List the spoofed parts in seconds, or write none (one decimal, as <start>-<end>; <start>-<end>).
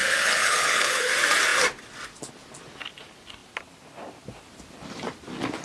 0.0-1.1